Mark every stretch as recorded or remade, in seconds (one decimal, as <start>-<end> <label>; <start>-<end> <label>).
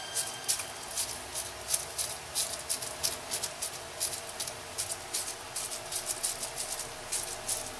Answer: 0.0-7.8 recorded